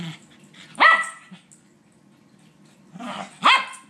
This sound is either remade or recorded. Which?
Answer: recorded